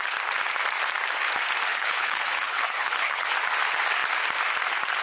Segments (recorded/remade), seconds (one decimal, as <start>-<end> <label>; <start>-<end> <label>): 0.0-1.7 recorded; 1.7-3.3 remade; 3.3-5.0 recorded